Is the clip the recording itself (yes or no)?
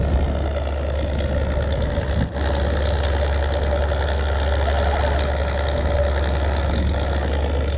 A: yes